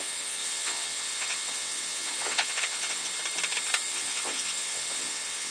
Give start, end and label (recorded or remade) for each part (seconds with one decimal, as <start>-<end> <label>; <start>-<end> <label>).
0.0-3.1 remade; 3.1-3.9 recorded; 3.9-5.5 remade